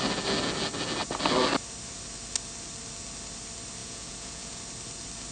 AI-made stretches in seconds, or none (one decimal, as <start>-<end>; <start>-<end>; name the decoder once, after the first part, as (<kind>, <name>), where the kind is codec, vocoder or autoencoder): 3.8-4.6 (vocoder, Vocos)